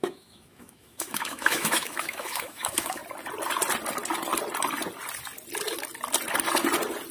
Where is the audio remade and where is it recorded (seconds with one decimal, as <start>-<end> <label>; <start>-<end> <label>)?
0.0-3.0 remade; 3.0-7.1 recorded